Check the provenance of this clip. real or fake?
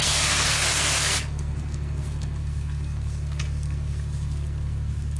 fake